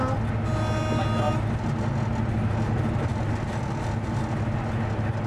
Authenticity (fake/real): real